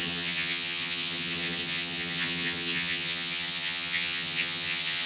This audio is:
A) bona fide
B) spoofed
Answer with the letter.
B